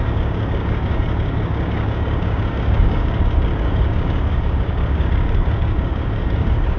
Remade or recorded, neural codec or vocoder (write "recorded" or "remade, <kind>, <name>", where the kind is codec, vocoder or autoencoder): remade, codec, DAC